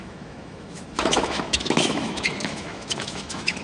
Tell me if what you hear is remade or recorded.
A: remade